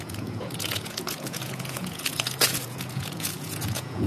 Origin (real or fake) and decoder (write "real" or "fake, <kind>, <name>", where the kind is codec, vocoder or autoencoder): fake, vocoder, Vocos